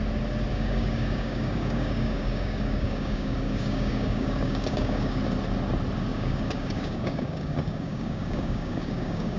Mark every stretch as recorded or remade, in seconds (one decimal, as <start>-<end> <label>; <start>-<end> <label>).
0.0-0.5 recorded; 0.5-5.2 remade; 5.2-6.1 recorded; 6.1-9.4 remade